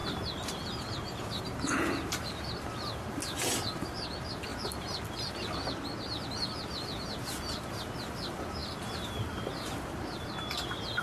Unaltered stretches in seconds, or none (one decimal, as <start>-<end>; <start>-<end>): 0.0-11.0